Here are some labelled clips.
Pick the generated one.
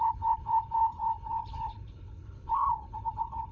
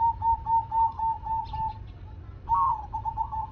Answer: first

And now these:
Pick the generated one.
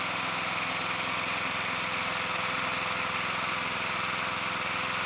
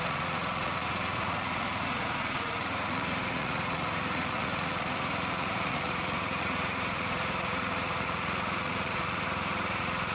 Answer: second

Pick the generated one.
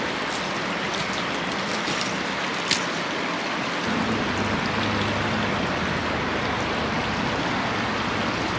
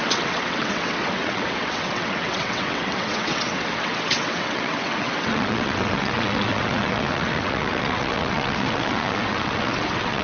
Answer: second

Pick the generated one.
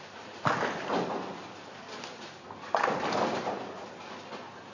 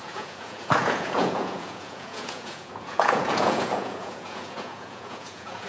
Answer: second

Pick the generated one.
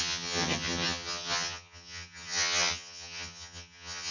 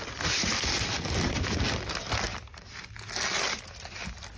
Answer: first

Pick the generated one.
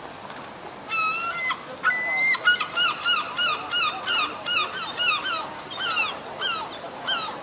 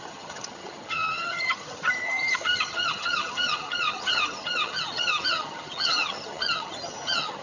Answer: second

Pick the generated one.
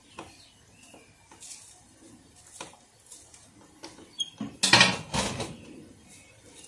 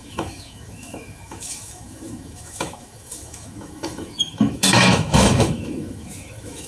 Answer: second